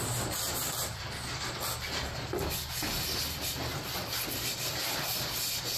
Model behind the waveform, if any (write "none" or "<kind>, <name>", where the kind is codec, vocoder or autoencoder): none